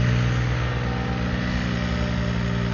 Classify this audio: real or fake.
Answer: real